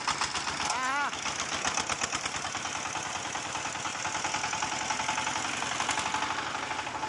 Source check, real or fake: real